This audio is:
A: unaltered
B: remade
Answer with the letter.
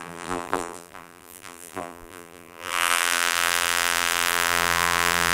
B